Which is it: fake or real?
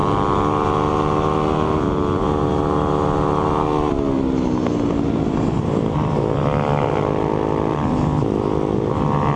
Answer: real